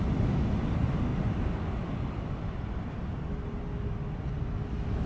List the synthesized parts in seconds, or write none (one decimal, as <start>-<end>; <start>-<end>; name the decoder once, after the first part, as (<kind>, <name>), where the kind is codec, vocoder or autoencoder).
none